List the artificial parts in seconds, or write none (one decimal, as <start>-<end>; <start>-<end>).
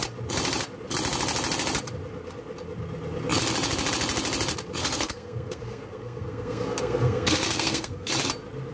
4.8-8.1